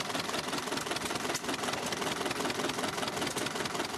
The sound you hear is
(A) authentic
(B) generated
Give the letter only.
A